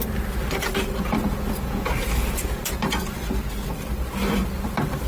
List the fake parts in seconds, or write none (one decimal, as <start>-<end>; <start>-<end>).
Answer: 1.2-2.6